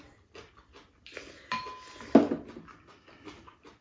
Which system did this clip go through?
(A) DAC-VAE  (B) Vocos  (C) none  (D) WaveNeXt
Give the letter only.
C